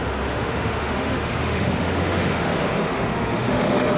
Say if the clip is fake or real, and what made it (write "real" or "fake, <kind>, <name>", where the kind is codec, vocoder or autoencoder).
fake, autoencoder, DAC-VAE